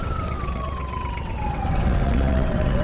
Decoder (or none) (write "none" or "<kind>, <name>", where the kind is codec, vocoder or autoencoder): vocoder, WaveNeXt